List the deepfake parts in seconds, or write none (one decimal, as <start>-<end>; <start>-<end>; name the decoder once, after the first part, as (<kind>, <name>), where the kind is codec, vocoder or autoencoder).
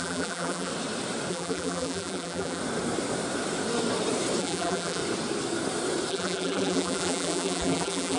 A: 0.0-0.7 (vocoder, BigVGAN v2); 1.3-2.6; 4.4-5.0; 6.1-8.2